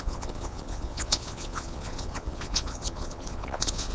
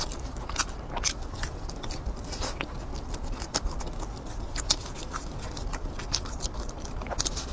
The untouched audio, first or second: second